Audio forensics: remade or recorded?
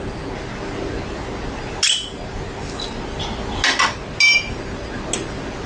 recorded